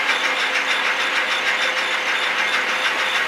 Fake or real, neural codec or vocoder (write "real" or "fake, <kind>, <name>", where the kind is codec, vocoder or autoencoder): real